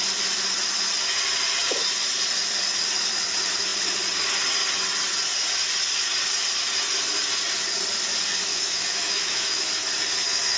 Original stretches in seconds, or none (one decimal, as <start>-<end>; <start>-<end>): 0.0-8.5; 9.7-10.6